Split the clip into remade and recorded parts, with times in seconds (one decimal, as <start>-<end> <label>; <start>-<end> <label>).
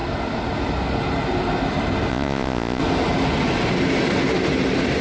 0.0-2.1 recorded; 2.1-2.8 remade; 2.8-5.0 recorded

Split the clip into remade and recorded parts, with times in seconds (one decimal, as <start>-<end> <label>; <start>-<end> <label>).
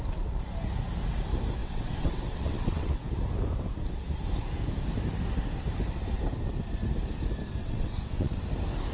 0.0-1.6 recorded; 1.6-3.0 remade; 3.0-7.6 recorded; 7.6-8.4 remade; 8.4-8.9 recorded